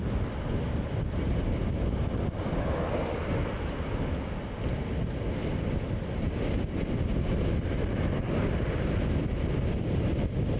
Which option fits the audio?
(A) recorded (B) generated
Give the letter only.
A